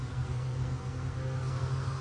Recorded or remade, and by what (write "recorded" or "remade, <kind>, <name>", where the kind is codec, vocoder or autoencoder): remade, codec, SNAC